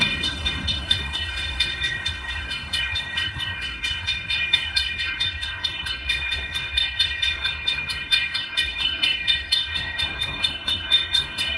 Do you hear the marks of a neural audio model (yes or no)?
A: yes